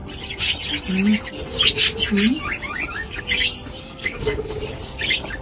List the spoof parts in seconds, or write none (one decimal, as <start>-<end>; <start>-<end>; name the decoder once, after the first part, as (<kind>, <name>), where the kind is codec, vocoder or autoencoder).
3.8-4.5 (codec, SNAC)